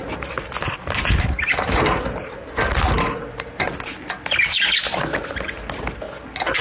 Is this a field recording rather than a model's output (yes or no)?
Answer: yes